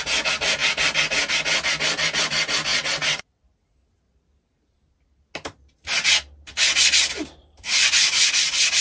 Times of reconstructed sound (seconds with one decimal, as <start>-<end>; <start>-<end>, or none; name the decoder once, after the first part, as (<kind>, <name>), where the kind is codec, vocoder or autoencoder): 2.7-3.4 (vocoder, WaveNeXt)